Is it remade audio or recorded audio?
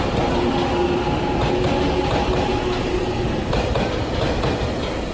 recorded